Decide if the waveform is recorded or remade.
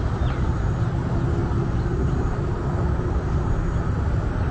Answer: recorded